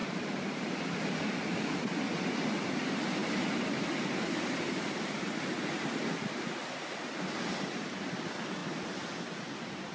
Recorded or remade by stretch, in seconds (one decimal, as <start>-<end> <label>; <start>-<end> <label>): 0.0-0.8 remade; 0.8-3.2 recorded; 3.2-5.7 remade; 5.7-9.9 recorded